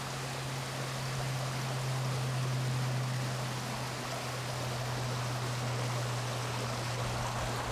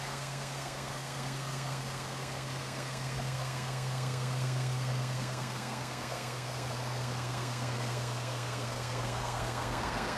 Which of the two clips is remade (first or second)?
second